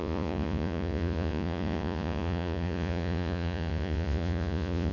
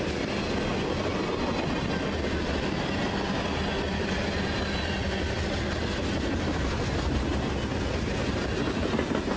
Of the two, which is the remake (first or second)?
first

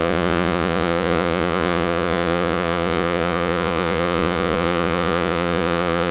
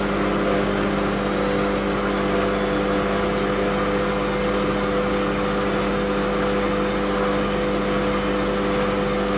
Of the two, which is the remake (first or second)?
first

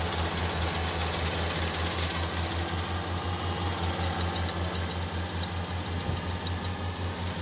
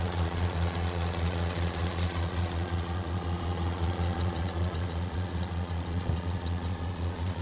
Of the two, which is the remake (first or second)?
second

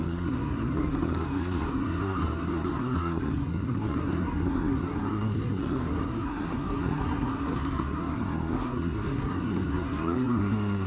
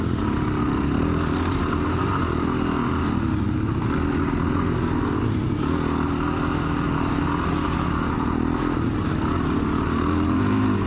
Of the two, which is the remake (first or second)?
first